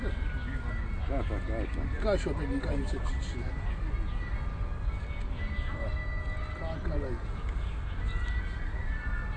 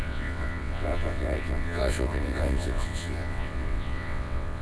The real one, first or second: first